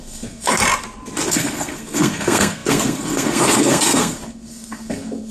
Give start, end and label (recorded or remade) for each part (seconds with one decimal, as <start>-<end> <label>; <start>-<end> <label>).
0.0-0.6 remade; 0.6-1.3 recorded; 1.3-5.3 remade